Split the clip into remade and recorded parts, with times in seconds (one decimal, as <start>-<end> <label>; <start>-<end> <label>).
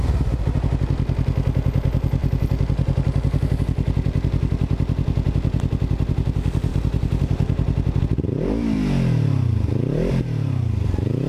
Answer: 0.0-11.3 recorded